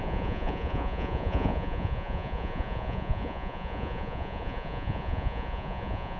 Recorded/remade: remade